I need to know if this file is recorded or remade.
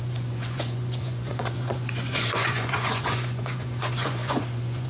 remade